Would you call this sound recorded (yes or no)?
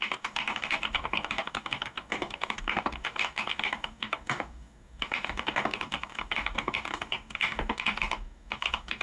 no